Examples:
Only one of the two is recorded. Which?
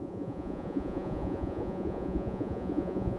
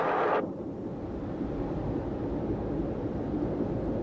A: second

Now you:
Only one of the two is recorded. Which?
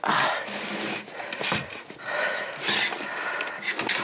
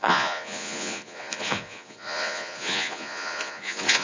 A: first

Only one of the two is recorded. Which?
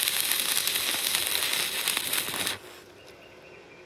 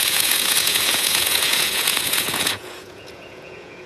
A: first